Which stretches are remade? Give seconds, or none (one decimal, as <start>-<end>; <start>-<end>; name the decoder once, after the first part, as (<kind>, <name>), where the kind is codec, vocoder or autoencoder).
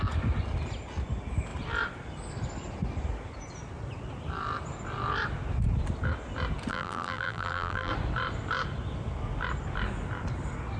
6.7-7.9 (vocoder, BigVGAN v2)